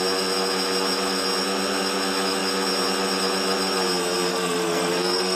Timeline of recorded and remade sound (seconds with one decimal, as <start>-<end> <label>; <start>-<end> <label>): 0.0-4.3 recorded; 4.3-5.4 remade